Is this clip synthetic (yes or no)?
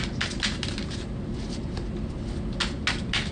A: no